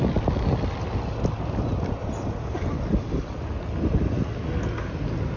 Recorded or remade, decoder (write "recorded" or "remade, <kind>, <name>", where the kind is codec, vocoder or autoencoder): recorded